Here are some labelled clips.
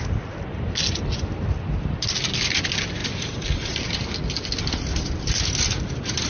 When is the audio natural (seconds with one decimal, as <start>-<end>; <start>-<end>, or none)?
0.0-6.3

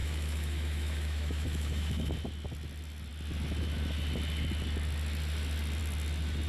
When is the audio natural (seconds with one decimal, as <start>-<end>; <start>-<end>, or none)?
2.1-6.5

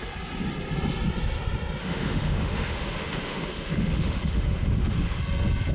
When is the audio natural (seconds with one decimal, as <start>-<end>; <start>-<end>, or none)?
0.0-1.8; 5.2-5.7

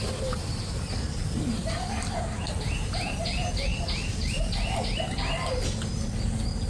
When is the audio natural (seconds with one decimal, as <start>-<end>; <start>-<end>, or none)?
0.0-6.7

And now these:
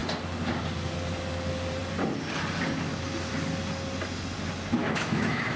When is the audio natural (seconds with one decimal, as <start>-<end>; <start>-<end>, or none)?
0.0-4.8

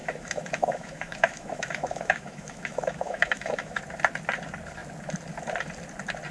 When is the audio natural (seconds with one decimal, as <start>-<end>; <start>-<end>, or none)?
3.8-6.3